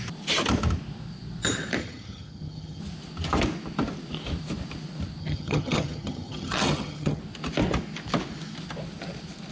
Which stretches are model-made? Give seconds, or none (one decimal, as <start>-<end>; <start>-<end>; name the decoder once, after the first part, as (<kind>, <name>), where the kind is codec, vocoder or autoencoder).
1.8-2.8 (vocoder, HiFi-GAN); 5.2-7.2